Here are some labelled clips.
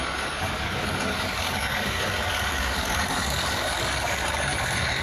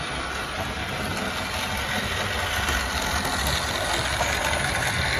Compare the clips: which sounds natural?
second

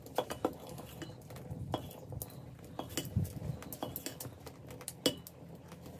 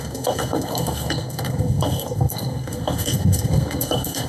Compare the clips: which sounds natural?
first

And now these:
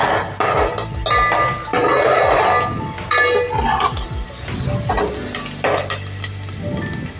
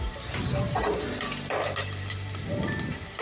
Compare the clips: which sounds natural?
first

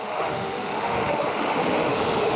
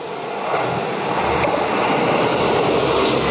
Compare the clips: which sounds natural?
second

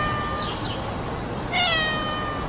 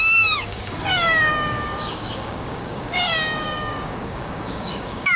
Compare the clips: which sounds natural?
first